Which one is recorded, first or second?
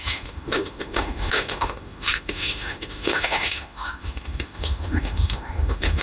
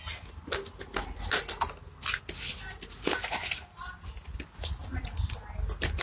second